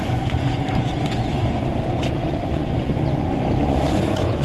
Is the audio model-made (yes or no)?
yes